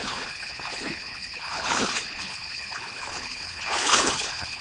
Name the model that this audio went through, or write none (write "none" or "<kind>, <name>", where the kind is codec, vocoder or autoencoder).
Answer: codec, HILCodec